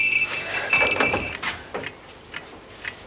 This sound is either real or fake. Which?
real